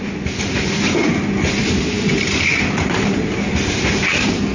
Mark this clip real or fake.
real